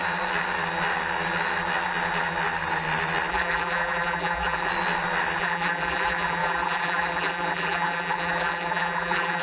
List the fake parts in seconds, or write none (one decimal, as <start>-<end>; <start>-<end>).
3.3-4.7; 5.4-9.4